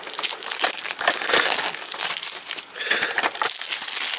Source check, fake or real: real